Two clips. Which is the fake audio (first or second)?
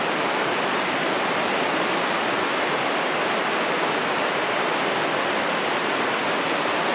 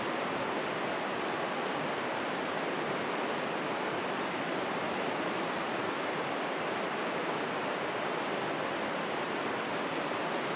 second